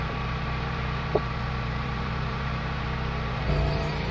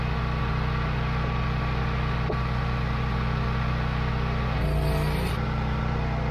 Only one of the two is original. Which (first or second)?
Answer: second